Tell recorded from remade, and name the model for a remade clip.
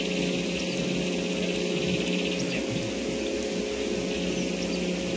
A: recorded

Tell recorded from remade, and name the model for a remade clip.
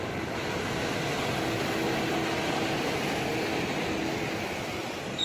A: recorded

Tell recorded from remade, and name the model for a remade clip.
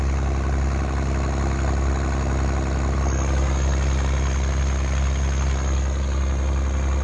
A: recorded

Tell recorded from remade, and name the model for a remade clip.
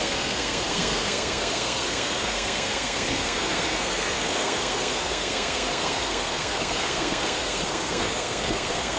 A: remade, codec, SNAC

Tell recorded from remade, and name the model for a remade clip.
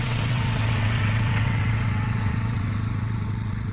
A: remade, vocoder, WaveNeXt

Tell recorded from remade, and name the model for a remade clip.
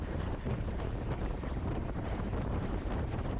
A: remade, vocoder, BigVGAN v2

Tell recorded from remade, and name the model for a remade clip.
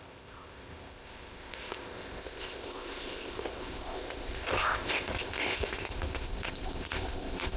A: remade, codec, ZipCodec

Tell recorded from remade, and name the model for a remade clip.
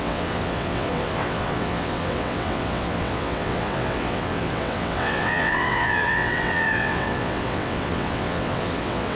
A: remade, vocoder, WaveNeXt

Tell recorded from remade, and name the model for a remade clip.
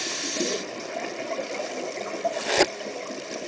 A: recorded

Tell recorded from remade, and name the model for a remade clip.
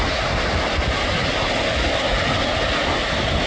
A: recorded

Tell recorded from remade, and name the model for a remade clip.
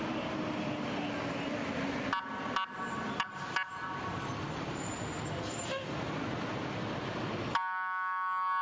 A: recorded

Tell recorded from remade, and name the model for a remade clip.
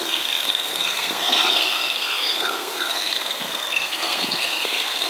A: remade, codec, SNAC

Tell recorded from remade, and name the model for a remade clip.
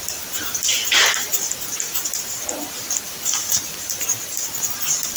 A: recorded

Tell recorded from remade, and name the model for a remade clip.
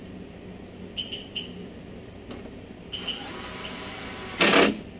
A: recorded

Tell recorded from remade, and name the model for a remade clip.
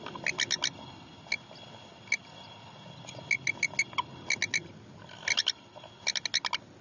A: recorded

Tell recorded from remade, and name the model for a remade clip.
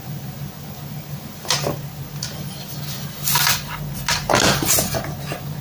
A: recorded